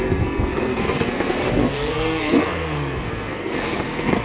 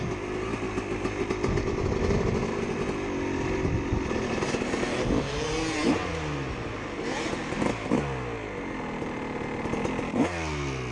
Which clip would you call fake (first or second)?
first